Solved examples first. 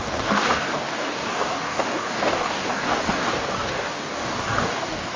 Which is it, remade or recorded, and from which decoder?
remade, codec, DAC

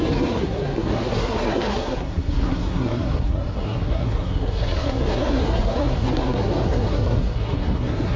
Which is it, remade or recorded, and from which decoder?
remade, codec, SNAC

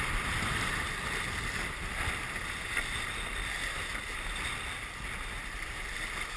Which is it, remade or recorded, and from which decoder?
recorded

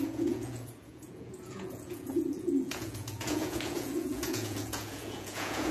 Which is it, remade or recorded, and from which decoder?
remade, vocoder, Vocos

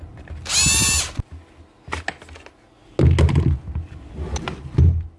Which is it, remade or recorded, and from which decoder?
recorded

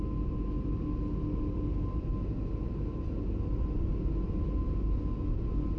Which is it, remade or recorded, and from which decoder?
recorded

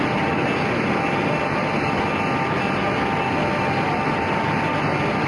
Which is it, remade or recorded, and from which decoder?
recorded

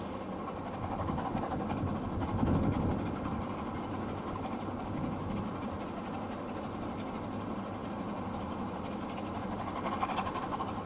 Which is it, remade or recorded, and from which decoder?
recorded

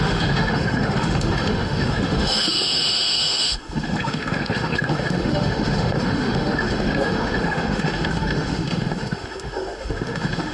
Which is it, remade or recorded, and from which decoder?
remade, autoencoder, DAC-VAE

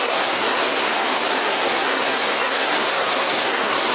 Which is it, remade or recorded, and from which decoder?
remade, codec, SNAC